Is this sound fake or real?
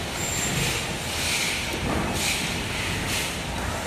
real